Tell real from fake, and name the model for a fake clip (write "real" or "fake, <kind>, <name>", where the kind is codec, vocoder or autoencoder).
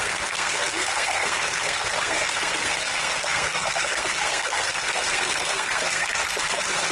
fake, codec, SNAC